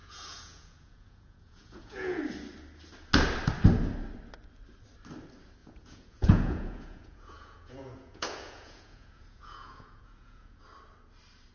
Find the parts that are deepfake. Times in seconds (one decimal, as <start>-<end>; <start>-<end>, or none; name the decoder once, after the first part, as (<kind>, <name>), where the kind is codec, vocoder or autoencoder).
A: 0.0-2.2 (vocoder, Vocos); 5.6-10.6